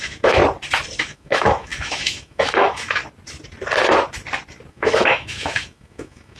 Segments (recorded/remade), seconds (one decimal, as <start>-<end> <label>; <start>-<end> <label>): 0.0-0.4 remade; 0.4-1.0 recorded; 1.0-3.0 remade; 3.0-4.7 recorded; 4.7-6.4 remade